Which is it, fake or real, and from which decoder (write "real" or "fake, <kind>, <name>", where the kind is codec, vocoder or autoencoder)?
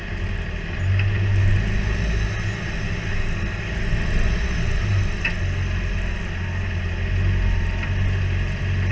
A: real